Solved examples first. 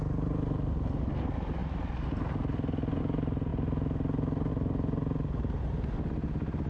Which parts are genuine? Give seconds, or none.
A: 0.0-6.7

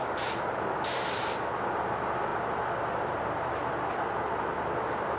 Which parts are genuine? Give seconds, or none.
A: 0.0-5.2

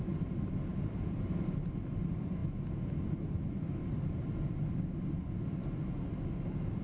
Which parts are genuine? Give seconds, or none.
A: 2.4-6.8

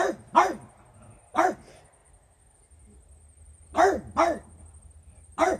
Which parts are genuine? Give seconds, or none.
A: 0.0-5.6

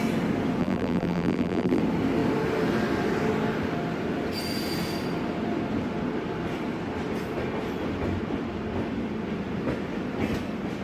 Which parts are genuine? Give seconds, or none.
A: 0.0-0.6; 1.8-10.8

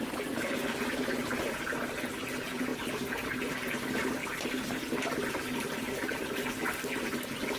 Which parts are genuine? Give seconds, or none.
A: 0.0-7.6